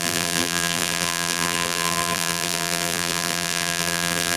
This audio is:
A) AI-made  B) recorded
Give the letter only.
A